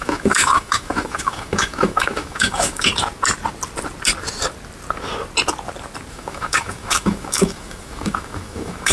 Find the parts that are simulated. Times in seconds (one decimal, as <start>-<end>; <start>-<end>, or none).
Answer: 0.0-2.9; 6.1-8.9